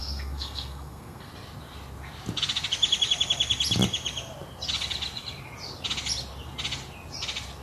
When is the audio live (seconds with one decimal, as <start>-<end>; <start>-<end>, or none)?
1.3-7.6

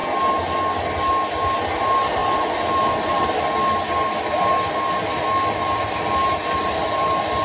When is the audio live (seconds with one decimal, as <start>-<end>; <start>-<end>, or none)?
0.0-7.4